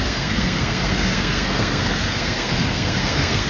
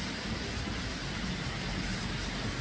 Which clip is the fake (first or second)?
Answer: first